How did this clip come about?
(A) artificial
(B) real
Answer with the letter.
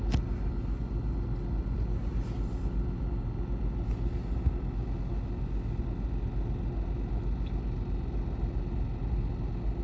B